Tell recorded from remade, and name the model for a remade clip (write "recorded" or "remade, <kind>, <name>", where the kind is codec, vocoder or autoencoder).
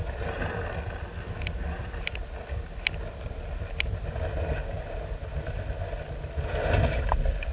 recorded